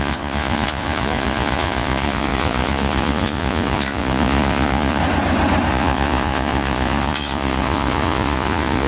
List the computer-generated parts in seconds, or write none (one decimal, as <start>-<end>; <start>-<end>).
0.0-5.0; 5.7-8.9